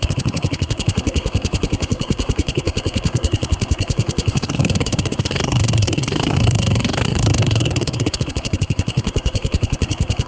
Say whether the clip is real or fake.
fake